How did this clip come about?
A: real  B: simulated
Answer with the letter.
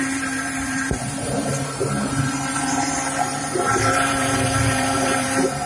B